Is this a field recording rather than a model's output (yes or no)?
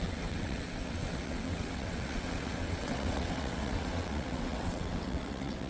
no